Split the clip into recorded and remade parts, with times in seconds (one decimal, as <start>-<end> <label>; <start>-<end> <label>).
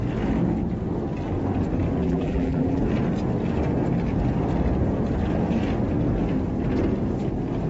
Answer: 0.0-2.0 recorded; 2.0-2.8 remade; 2.8-7.7 recorded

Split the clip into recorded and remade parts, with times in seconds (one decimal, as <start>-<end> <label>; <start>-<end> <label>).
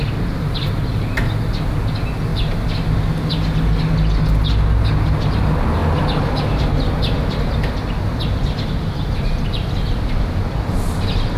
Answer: 0.0-11.4 recorded